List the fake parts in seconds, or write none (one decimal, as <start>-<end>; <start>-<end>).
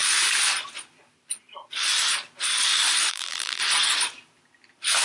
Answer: 3.1-3.6